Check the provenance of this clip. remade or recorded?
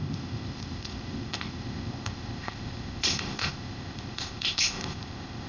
remade